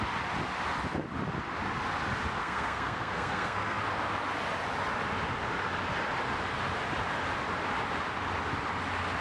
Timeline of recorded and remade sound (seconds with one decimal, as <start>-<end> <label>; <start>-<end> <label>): 0.0-2.4 recorded; 2.4-3.8 remade; 3.8-9.2 recorded